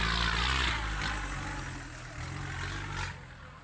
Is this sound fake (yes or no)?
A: no